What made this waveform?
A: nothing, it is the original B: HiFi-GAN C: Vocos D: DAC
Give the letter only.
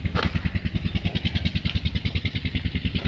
A